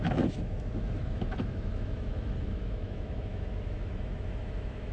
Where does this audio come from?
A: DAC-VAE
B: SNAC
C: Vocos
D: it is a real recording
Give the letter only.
A